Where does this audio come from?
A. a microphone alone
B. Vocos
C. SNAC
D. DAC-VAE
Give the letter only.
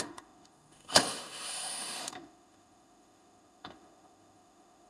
D